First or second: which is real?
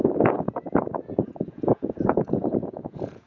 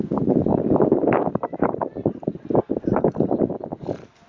second